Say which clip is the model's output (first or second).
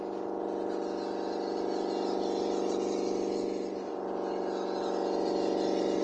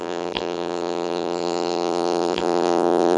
second